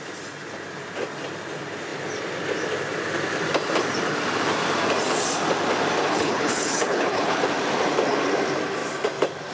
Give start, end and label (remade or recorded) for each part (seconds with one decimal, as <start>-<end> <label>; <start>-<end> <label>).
0.0-6.0 recorded; 6.0-7.4 remade; 7.4-9.5 recorded